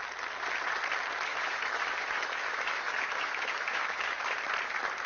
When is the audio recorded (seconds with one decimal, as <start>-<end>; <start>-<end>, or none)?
0.0-1.3; 4.4-5.1